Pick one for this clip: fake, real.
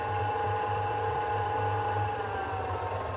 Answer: fake